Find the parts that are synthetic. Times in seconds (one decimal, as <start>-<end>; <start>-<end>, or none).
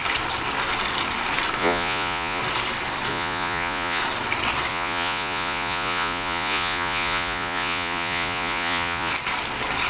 1.6-2.4; 3.1-4.0; 4.7-9.1